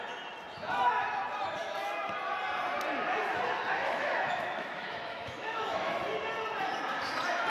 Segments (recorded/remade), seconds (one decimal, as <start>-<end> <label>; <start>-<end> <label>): 0.0-3.8 recorded; 3.8-6.0 remade; 6.0-7.5 recorded

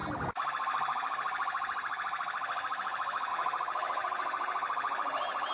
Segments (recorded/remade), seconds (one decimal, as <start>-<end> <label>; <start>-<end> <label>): 0.0-5.5 recorded

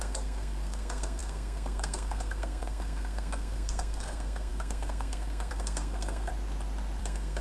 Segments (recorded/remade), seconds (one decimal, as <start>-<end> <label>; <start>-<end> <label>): 0.0-6.3 remade; 6.3-7.0 recorded; 7.0-7.4 remade

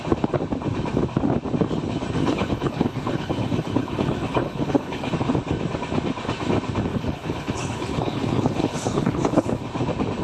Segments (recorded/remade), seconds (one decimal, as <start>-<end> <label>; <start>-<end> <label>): 0.0-2.2 recorded; 2.2-5.1 remade; 5.1-6.9 recorded; 6.9-9.6 remade; 9.6-10.2 recorded

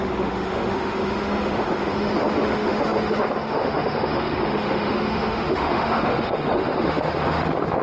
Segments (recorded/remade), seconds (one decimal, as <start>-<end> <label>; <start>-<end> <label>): 0.0-7.8 remade

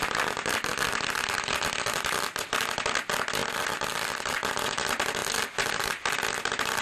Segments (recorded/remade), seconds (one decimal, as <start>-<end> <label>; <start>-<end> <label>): 0.0-3.4 recorded; 3.4-4.5 remade; 4.5-6.8 recorded

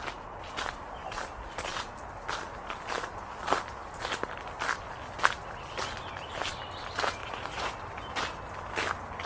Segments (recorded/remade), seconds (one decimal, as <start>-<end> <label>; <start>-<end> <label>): 0.0-7.2 recorded; 7.2-7.7 remade; 7.7-9.3 recorded

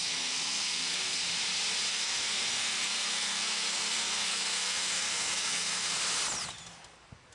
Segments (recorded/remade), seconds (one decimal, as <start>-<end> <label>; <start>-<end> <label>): 0.0-1.2 remade; 1.2-1.9 recorded; 1.9-6.0 remade; 6.0-7.3 recorded